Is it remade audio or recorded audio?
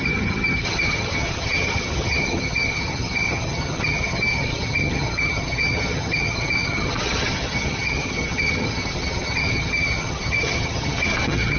remade